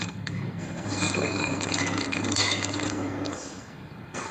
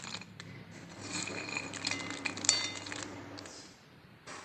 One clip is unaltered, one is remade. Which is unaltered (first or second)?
second